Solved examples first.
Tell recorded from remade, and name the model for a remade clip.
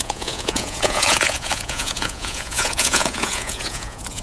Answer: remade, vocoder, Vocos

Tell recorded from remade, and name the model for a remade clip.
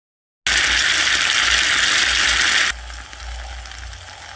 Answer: recorded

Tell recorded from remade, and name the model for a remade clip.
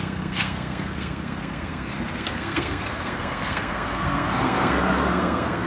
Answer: remade, codec, SNAC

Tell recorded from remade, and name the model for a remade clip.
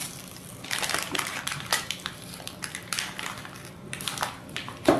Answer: remade, vocoder, BigVGAN v2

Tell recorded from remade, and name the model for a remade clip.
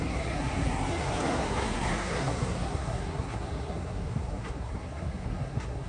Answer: remade, codec, SNAC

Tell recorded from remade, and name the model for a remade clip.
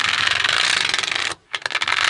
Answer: recorded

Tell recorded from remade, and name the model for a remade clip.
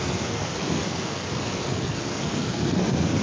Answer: remade, codec, SNAC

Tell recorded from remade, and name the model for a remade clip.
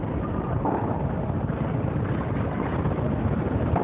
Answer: remade, vocoder, BigVGAN v2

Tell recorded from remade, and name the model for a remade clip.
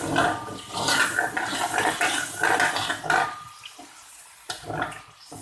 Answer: recorded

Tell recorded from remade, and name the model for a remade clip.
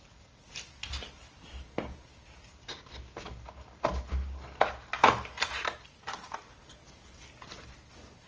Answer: recorded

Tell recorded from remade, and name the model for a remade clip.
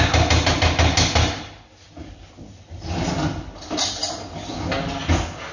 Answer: recorded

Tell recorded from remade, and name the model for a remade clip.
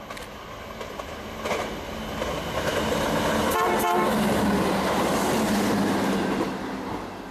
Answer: recorded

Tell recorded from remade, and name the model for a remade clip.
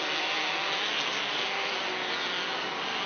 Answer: recorded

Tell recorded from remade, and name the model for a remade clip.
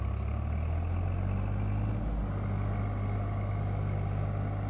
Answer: recorded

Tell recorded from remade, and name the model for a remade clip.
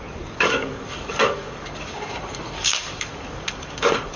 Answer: remade, codec, DAC